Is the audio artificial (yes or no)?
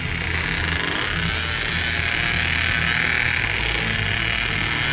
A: no